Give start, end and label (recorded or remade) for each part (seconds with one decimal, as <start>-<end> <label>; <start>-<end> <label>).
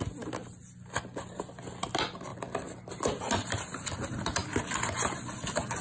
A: 0.0-5.8 recorded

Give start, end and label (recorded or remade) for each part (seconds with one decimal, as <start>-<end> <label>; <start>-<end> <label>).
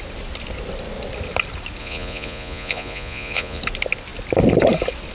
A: 0.0-1.8 recorded; 1.8-3.6 remade; 3.6-5.1 recorded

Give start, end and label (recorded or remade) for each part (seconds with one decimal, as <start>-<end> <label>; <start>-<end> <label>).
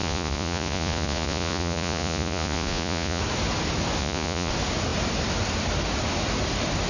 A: 0.0-3.2 remade; 3.2-4.0 recorded; 4.0-4.5 remade; 4.5-6.9 recorded